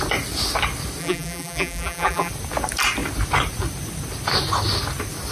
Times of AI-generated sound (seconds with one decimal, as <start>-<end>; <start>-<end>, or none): 1.0-2.3